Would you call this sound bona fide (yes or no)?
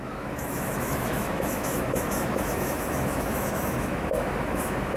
no